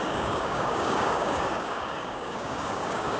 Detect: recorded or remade remade